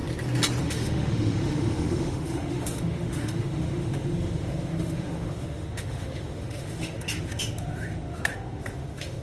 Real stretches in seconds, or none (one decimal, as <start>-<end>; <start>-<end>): 0.0-0.6

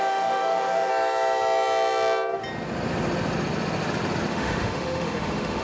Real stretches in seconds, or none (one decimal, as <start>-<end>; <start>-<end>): 0.9-4.3

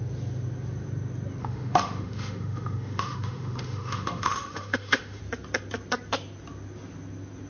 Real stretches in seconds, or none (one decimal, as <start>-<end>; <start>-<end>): 0.0-1.4; 5.2-7.5

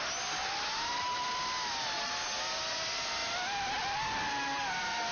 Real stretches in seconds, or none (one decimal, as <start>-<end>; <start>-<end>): 0.0-5.1

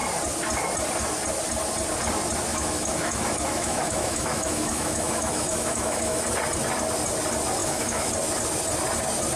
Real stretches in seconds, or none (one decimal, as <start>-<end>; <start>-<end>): 0.0-2.5; 6.2-7.6; 8.1-9.4